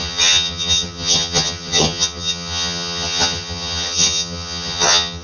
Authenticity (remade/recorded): remade